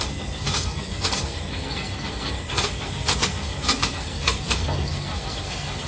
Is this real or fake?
fake